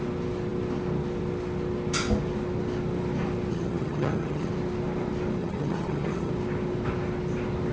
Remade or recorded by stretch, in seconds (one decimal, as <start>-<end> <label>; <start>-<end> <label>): 0.0-3.5 recorded; 3.5-4.5 remade; 4.5-5.4 recorded; 5.4-6.3 remade; 6.3-7.7 recorded

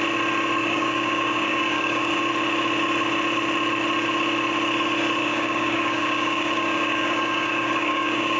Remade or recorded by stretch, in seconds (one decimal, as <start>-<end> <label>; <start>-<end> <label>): 0.0-0.6 recorded; 0.6-2.3 remade; 2.3-5.2 recorded; 5.2-8.4 remade

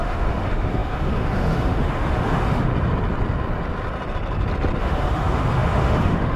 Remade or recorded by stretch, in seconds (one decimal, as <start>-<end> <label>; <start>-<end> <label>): 0.0-2.7 remade; 2.7-4.8 recorded; 4.8-6.4 remade

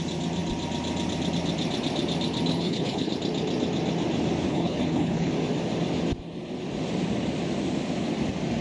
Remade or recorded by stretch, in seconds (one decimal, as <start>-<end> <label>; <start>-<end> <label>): 0.0-2.5 recorded; 2.5-3.1 remade; 3.1-4.5 recorded; 4.5-5.3 remade; 5.3-8.6 recorded

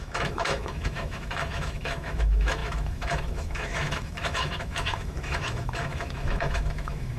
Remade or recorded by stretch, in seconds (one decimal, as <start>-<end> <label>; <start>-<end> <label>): 0.0-7.2 remade

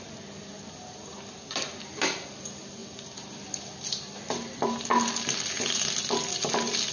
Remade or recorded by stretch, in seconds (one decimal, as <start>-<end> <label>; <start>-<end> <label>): 0.0-6.9 recorded

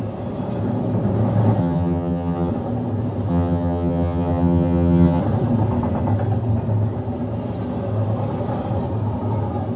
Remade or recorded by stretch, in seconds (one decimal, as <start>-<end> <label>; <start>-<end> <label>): 0.0-1.6 recorded; 1.6-2.5 remade; 2.5-3.3 recorded; 3.3-5.2 remade; 5.2-9.8 recorded